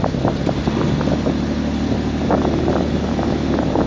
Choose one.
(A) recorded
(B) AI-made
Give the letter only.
A